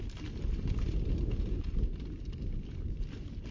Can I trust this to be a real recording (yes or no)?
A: yes